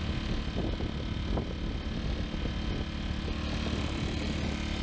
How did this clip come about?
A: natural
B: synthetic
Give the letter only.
A